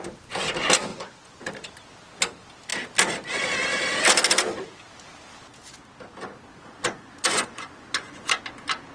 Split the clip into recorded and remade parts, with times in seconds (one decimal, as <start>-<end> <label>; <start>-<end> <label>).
0.0-0.9 recorded; 0.9-1.5 remade; 1.5-6.5 recorded; 6.5-8.3 remade; 8.3-8.9 recorded